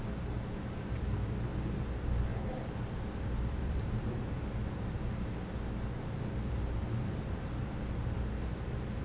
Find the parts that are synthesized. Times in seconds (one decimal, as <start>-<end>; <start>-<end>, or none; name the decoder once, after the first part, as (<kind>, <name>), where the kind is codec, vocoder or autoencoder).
2.3-4.2 (vocoder, BigVGAN v2)